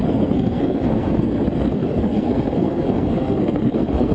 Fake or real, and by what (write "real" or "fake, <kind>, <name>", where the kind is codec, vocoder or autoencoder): fake, codec, SNAC